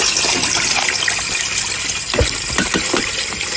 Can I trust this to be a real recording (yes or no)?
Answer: yes